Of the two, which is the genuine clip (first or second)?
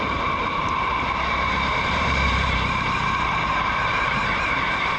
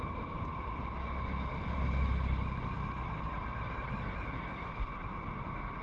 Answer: second